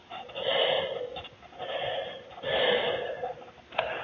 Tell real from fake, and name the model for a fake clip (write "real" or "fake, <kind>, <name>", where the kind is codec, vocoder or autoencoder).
real